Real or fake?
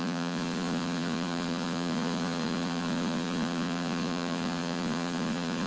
fake